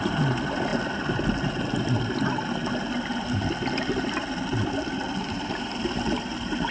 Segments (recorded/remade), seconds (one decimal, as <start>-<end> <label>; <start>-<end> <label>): 0.0-6.7 recorded